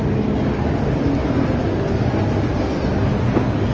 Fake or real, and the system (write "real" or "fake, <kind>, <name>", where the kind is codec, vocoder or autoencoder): real